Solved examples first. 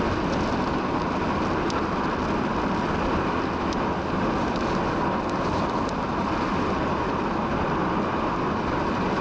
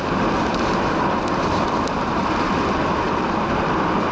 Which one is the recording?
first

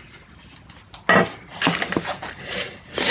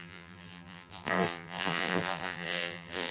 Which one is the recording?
first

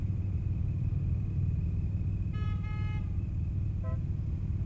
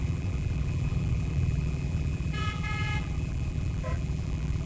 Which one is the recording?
first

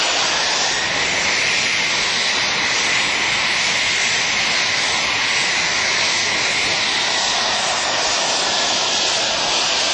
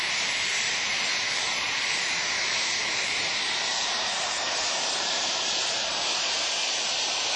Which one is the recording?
first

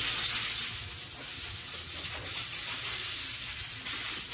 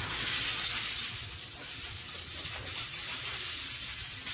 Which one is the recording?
first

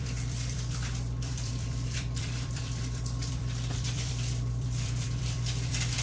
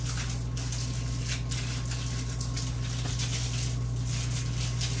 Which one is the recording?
second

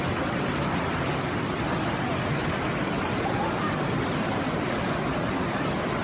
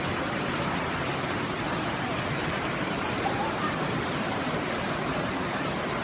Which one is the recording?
first